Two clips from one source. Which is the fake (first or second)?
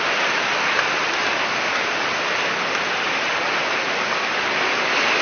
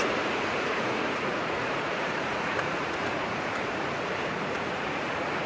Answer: second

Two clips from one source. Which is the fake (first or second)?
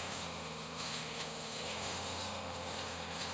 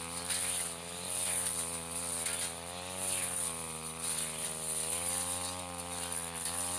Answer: first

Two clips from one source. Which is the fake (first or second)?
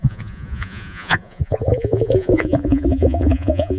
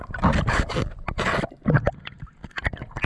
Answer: first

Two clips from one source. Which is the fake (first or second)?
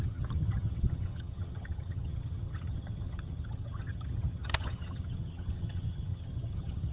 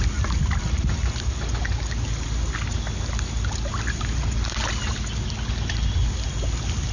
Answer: first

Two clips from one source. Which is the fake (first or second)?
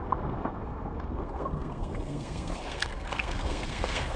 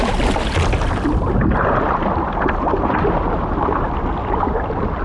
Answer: first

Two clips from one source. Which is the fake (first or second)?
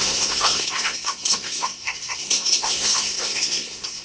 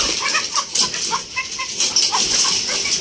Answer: first